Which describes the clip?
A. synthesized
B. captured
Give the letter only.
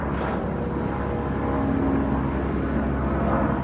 B